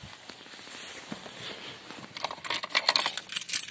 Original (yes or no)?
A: yes